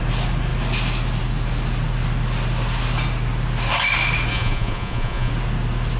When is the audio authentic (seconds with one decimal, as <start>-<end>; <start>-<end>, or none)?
0.0-4.3; 5.3-6.0